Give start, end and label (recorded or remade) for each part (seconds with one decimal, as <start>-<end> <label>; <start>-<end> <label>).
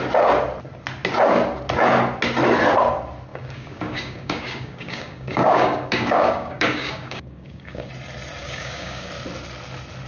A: 0.0-3.3 recorded; 3.3-7.9 remade; 7.9-8.4 recorded; 8.4-9.1 remade; 9.1-10.1 recorded